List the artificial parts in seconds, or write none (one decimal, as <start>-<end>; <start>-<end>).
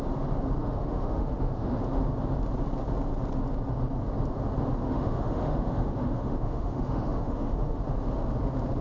0.6-1.8; 4.8-7.8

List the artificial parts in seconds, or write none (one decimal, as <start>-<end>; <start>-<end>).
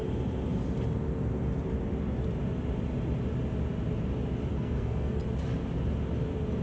4.5-5.2